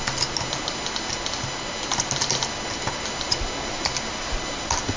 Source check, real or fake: real